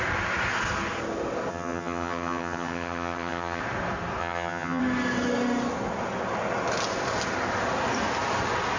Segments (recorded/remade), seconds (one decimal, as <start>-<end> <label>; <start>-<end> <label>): 0.0-1.5 recorded; 1.5-3.6 remade; 3.6-4.2 recorded; 4.2-4.8 remade; 4.8-8.8 recorded